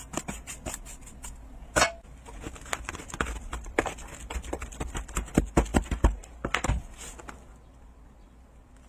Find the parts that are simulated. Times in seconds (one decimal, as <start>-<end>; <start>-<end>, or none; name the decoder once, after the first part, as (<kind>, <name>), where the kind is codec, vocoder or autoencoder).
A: none